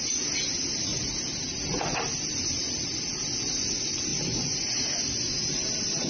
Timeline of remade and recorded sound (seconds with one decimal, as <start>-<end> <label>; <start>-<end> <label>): 0.0-4.1 recorded; 4.1-4.7 remade; 4.7-6.1 recorded